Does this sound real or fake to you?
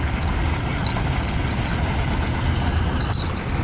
real